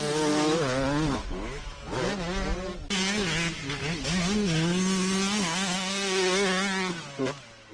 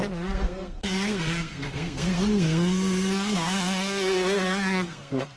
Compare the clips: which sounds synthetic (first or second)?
second